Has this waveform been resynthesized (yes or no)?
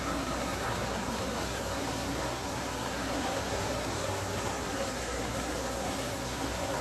yes